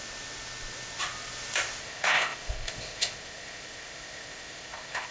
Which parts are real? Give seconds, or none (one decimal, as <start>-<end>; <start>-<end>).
0.0-1.8

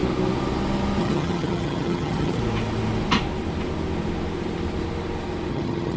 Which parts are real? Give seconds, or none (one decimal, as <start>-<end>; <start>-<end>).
0.0-1.0; 2.4-5.5

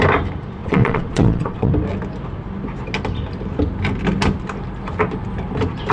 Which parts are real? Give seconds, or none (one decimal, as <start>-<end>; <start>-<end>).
0.0-0.6; 1.7-5.9

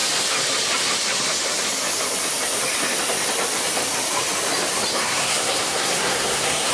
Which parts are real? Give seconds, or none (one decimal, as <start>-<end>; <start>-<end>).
0.0-4.9